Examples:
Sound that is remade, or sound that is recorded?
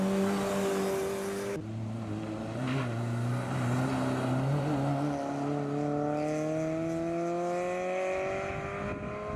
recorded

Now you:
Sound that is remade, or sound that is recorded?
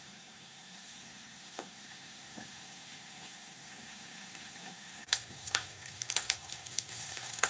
remade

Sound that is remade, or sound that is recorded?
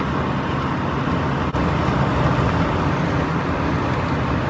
recorded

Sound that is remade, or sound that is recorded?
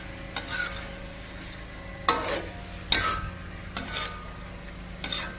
recorded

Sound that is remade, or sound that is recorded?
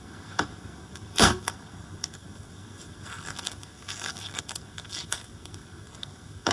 remade